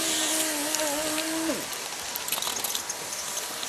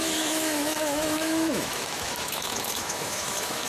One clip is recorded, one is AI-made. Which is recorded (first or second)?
first